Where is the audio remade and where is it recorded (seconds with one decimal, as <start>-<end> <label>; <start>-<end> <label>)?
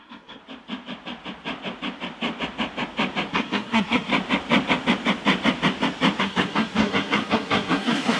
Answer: 0.0-0.4 remade; 0.4-3.3 recorded; 3.3-4.1 remade; 4.1-6.2 recorded; 6.2-8.2 remade